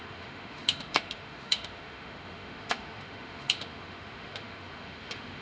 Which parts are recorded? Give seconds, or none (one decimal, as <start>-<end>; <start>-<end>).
none